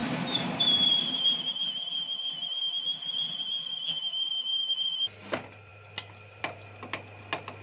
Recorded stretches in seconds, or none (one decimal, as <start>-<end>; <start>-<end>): 1.6-7.6